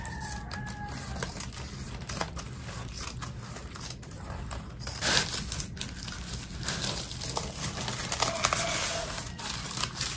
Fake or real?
real